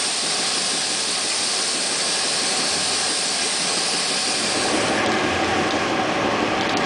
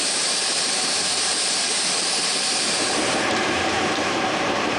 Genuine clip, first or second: first